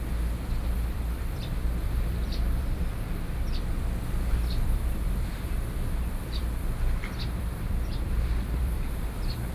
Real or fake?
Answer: fake